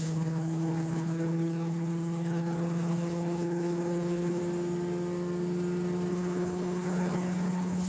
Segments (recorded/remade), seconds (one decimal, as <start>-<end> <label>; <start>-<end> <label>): 0.0-4.4 remade; 4.4-6.1 recorded; 6.1-7.9 remade